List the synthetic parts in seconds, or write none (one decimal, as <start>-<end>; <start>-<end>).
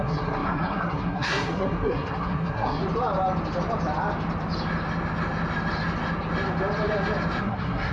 0.0-2.8; 7.4-7.9